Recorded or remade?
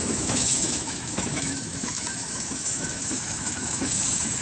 remade